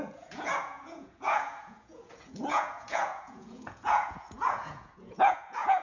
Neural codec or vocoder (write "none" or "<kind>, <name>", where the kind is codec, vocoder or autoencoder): vocoder, Vocos